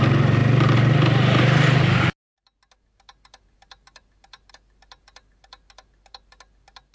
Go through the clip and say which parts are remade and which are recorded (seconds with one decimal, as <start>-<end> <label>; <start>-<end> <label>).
0.0-6.9 recorded

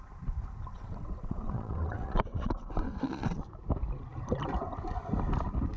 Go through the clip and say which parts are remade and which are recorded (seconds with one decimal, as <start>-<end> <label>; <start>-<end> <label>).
0.0-0.7 recorded; 0.7-3.4 remade; 3.4-5.8 recorded